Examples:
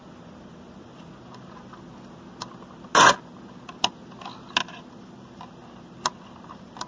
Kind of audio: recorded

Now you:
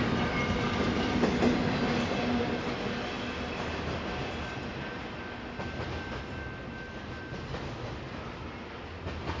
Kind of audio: recorded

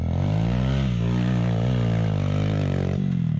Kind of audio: recorded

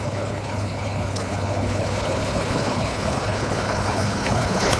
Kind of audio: remade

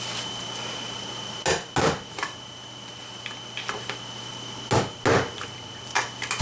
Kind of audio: recorded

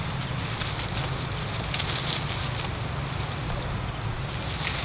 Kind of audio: recorded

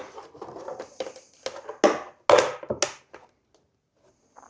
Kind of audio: recorded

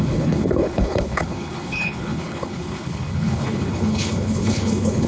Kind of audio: remade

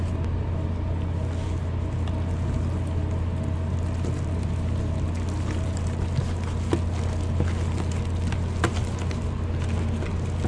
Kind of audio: recorded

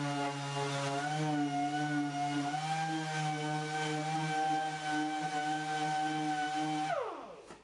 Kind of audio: recorded